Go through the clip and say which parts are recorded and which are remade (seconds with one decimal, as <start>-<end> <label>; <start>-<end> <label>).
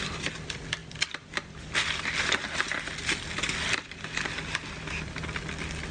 0.0-5.9 recorded